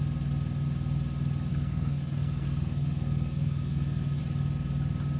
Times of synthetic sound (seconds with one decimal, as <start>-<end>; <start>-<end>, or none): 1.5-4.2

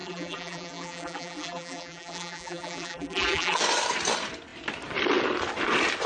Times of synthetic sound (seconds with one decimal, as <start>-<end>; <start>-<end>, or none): 0.0-3.6

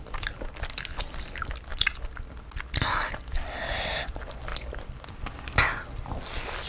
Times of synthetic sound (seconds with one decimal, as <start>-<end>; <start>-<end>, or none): none